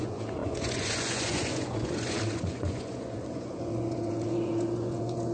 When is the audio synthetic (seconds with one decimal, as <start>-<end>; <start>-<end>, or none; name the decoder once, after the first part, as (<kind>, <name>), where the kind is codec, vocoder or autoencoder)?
0.0-5.3 (vocoder, Vocos)